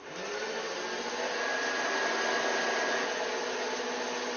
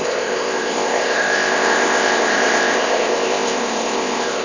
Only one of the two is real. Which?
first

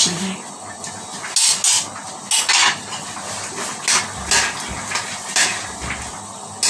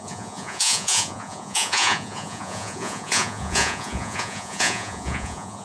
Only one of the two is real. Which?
first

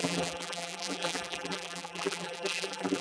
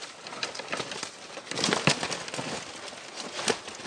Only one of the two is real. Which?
second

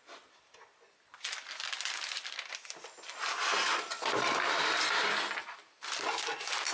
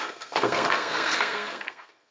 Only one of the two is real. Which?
first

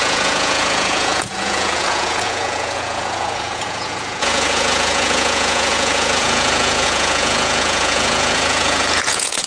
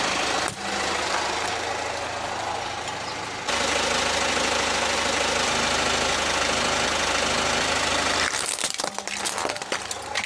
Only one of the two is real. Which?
second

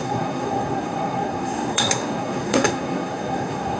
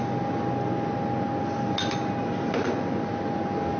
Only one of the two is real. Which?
second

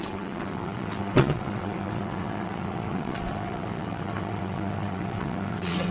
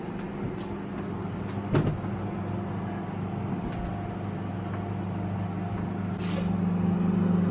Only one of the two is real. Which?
second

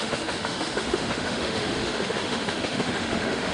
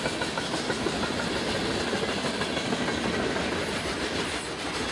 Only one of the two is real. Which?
second